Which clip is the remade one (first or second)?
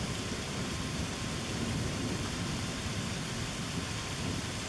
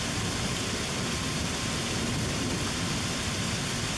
first